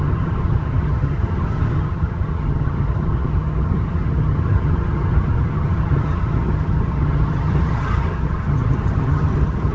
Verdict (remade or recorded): remade